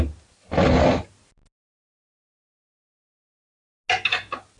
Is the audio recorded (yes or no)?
yes